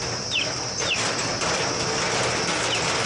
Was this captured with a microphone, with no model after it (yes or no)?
yes